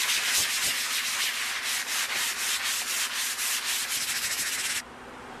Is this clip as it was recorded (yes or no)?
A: yes